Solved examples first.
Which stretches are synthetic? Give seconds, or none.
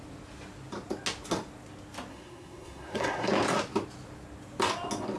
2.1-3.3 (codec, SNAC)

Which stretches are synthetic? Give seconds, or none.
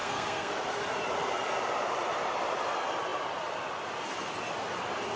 0.0-0.5 (codec, SNAC)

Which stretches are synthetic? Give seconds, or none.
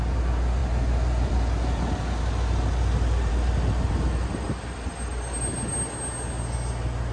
none